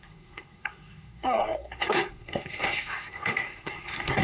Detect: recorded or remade remade